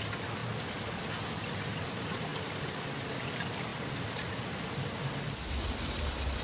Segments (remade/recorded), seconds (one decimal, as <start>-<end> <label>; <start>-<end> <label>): 0.0-0.4 remade; 0.4-1.4 recorded; 1.4-2.3 remade; 2.3-3.2 recorded; 3.2-3.7 remade; 3.7-6.4 recorded